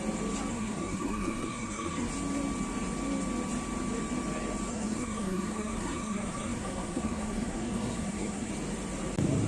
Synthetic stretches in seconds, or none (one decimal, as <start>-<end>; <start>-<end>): 0.5-2.1; 4.7-8.5